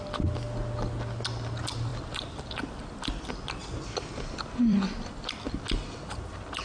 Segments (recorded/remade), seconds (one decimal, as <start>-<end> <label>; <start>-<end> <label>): 0.0-1.9 recorded; 1.9-2.5 remade; 2.5-3.6 recorded; 3.6-5.3 remade; 5.3-6.6 recorded